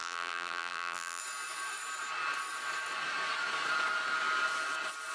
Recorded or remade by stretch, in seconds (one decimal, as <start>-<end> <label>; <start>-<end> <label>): 0.0-1.2 remade; 1.2-5.1 recorded

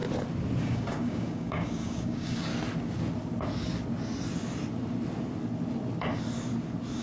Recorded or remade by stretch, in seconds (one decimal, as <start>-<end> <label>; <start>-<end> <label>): 0.0-0.6 recorded; 0.6-2.5 remade; 2.5-7.0 recorded